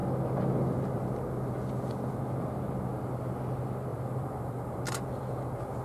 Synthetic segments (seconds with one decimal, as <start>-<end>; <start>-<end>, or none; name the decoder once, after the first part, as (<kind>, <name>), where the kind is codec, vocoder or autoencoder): 3.9-5.2 (vocoder, BigVGAN v2)